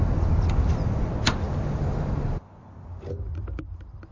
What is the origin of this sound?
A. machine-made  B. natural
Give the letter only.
B